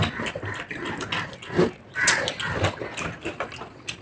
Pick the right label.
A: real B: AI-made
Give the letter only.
A